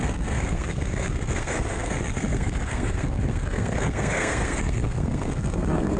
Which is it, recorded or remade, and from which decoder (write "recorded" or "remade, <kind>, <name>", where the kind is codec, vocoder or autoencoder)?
remade, codec, SNAC